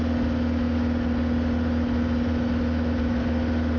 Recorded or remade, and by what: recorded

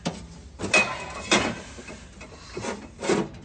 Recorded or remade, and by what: recorded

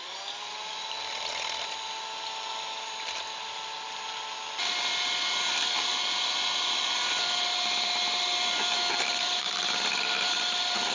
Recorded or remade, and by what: remade, vocoder, BigVGAN v2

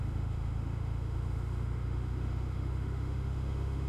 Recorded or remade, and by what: remade, autoencoder, DAC-VAE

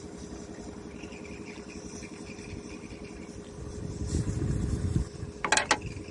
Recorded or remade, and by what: recorded